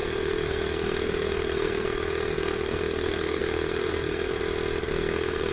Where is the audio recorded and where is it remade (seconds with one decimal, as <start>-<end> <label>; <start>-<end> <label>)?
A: 0.0-4.3 remade; 4.3-4.9 recorded; 4.9-5.5 remade